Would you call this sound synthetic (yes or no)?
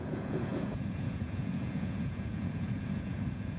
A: yes